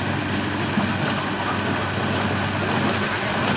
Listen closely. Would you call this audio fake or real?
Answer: real